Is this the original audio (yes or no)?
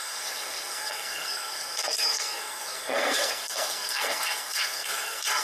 no